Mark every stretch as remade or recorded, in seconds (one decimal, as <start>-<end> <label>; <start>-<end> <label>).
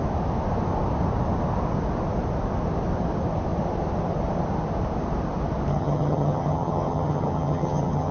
0.0-5.7 recorded; 5.7-8.1 remade